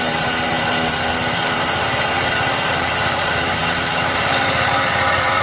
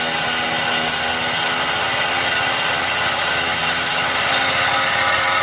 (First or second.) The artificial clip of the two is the first